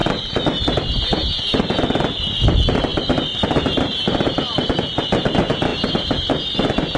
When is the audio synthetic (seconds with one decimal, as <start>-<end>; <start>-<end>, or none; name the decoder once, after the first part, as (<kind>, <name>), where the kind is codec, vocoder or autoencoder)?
2.9-4.4 (vocoder, BigVGAN v2); 5.7-6.3